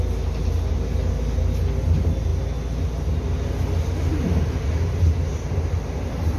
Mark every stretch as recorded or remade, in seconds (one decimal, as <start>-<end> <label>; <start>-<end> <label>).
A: 0.0-4.1 recorded; 4.1-6.4 remade